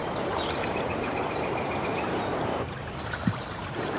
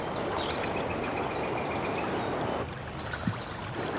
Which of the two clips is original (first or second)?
second